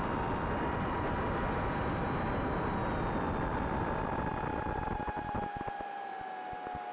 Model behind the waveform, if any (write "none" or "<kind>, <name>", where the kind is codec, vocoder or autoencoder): none